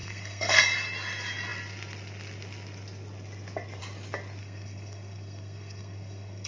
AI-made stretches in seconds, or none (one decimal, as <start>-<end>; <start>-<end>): 0.0-0.6; 4.4-6.5